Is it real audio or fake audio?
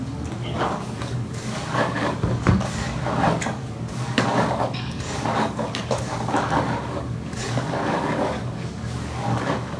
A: fake